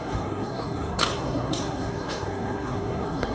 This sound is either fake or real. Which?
fake